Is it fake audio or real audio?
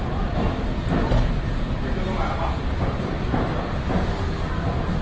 real